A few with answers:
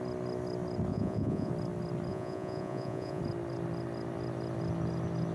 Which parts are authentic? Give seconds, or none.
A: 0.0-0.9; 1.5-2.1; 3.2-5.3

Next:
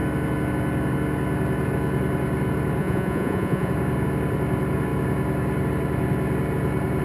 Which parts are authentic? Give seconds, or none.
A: 0.0-2.8; 3.7-7.0